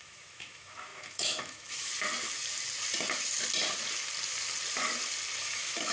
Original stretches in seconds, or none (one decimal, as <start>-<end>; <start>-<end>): 1.9-5.4